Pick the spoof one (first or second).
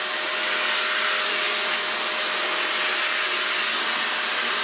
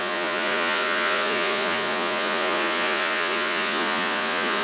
second